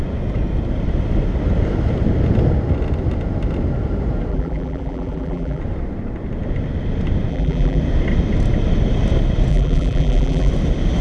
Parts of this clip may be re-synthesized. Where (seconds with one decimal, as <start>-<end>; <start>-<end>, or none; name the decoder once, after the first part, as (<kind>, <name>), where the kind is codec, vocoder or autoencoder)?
4.3-5.6 (vocoder, BigVGAN v2); 7.3-7.8; 9.5-10.5